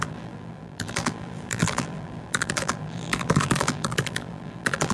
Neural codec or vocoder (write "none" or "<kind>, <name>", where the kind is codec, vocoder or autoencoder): vocoder, BigVGAN v2